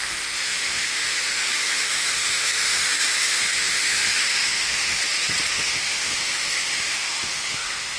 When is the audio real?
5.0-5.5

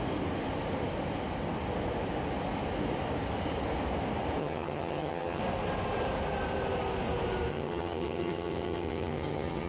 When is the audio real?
0.0-4.4; 5.4-7.5

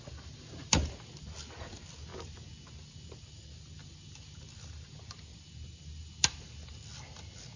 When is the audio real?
0.0-7.6

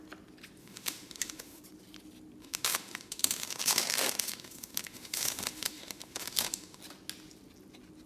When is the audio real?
0.0-0.6; 1.6-2.4; 6.8-8.1

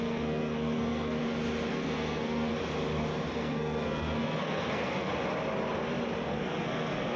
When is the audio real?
1.2-1.7; 2.5-3.3; 5.1-6.3

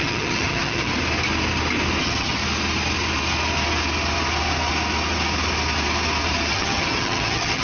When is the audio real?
0.9-2.0; 2.4-6.5

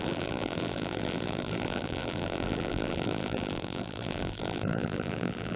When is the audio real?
none